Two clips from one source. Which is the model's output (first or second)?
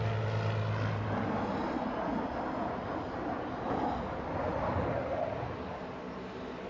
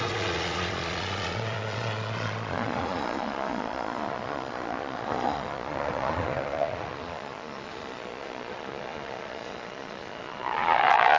second